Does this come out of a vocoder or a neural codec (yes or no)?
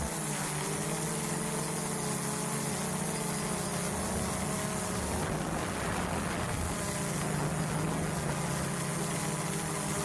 no